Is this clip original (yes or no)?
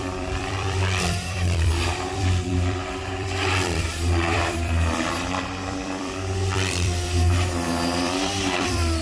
no